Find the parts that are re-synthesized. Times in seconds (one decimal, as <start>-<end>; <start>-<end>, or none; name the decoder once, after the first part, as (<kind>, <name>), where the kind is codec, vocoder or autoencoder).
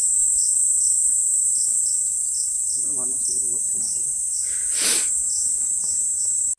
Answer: none